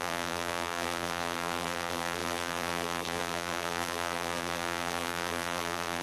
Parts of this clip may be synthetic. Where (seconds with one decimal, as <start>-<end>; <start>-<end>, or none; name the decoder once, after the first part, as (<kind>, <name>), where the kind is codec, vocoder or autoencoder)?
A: 0.0-6.0 (vocoder, BigVGAN v2)